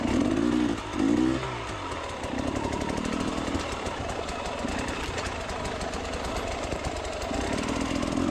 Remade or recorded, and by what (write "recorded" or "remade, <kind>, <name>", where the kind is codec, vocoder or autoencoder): recorded